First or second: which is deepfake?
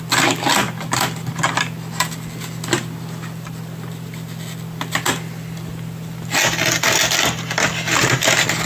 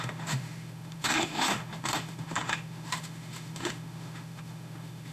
second